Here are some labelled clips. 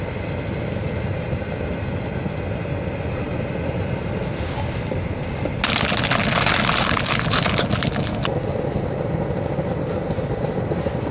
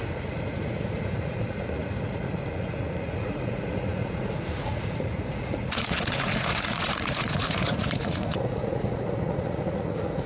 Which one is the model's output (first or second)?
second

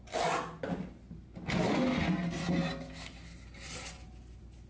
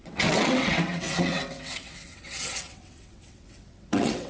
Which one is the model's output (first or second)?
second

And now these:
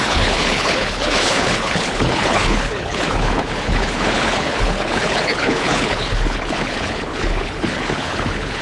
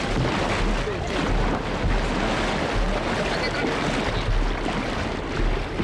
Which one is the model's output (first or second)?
first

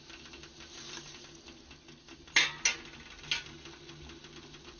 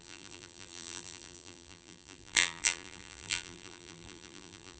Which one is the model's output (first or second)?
second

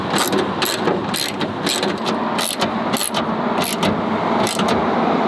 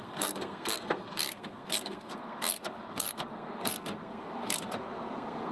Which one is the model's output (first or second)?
second